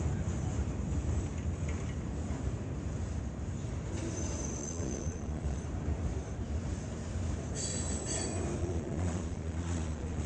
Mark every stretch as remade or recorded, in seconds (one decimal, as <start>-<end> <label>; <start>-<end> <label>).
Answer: 0.0-4.6 recorded; 4.6-5.6 remade; 5.6-8.6 recorded; 8.6-10.3 remade